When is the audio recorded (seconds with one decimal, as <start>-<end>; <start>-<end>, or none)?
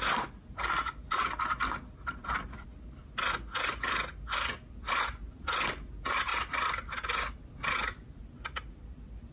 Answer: 0.0-9.3